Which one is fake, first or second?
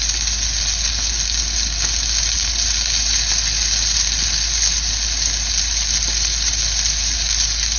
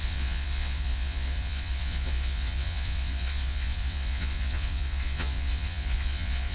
second